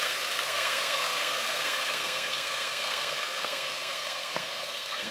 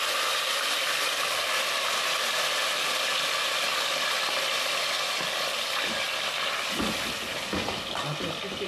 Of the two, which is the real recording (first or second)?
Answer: second